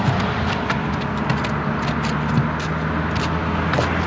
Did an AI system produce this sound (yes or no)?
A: no